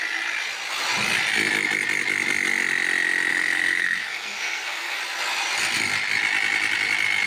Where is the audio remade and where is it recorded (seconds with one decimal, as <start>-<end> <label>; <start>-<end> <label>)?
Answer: 0.0-3.3 recorded; 3.3-5.0 remade; 5.0-7.3 recorded